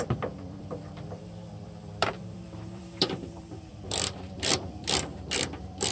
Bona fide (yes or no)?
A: no